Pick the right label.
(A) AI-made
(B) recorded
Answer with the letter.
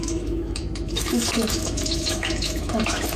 A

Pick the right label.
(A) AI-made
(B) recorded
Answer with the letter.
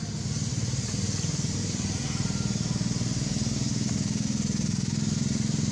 B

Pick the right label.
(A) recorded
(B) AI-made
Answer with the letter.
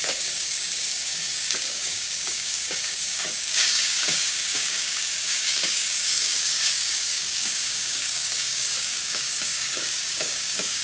B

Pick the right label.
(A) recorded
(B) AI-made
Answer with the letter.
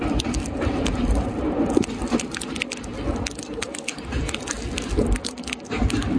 A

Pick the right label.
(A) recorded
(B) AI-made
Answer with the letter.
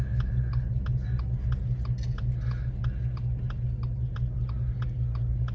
A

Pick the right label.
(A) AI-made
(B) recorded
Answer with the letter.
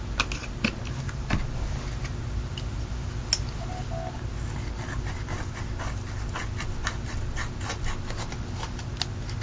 B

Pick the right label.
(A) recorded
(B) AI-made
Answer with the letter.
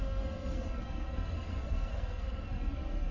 B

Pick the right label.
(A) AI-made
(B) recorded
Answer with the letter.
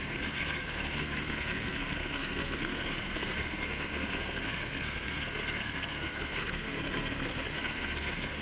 A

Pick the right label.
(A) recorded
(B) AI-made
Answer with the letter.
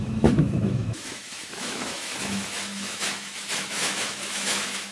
B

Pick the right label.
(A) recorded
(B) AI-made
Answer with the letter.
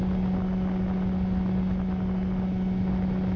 A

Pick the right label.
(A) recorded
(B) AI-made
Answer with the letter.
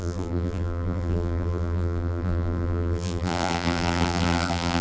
B